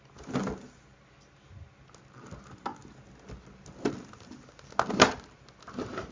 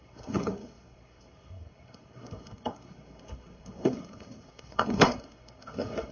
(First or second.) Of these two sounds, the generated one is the second